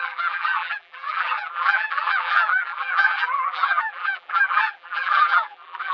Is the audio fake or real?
fake